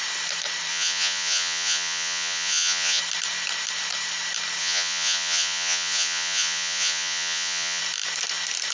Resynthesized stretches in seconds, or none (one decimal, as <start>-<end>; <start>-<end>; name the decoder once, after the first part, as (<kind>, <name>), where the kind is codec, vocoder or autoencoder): 0.7-3.0 (vocoder, Vocos); 4.6-7.8